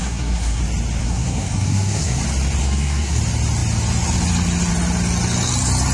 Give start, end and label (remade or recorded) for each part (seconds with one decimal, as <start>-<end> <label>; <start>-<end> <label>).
0.0-0.6 remade; 0.6-1.0 recorded; 1.0-2.2 remade; 2.2-2.6 recorded; 2.6-3.2 remade; 3.2-5.9 recorded